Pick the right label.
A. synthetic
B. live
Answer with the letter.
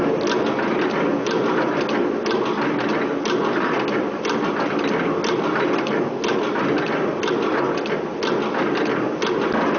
B